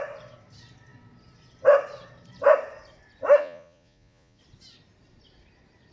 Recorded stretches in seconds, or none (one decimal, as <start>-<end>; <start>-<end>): 0.0-3.4; 4.4-5.9